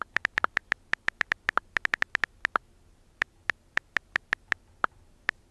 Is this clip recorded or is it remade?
recorded